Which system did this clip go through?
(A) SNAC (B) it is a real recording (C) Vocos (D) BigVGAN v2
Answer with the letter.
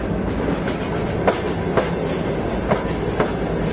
B